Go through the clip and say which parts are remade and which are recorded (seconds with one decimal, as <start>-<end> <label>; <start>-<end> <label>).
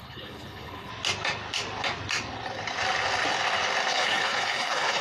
0.0-0.9 remade; 0.9-3.9 recorded; 3.9-5.0 remade